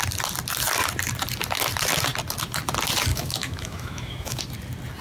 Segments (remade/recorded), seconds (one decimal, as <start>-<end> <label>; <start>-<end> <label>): 0.0-3.1 recorded; 3.1-4.4 remade; 4.4-5.0 recorded